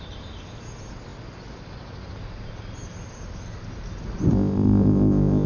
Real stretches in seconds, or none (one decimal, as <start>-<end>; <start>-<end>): 0.0-4.3